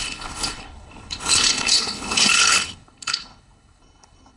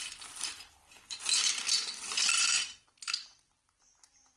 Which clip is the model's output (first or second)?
first